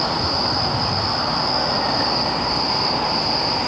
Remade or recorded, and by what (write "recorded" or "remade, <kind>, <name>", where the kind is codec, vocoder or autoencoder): recorded